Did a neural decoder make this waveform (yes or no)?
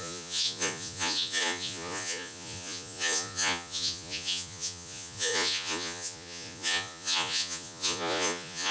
yes